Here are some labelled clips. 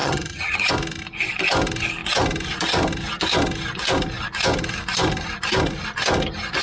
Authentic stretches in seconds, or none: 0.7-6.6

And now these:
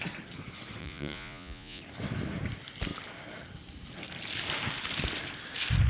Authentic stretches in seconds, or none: 0.0-0.8; 1.8-5.9

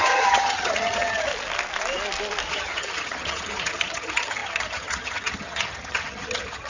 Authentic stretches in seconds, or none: 1.3-2.5

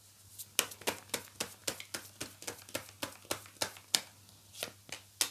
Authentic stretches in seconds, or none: 0.0-5.3